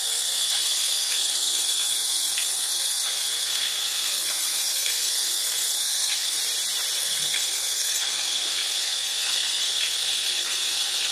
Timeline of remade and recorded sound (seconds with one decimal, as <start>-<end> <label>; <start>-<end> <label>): 0.0-6.4 remade; 6.4-7.0 recorded; 7.0-11.1 remade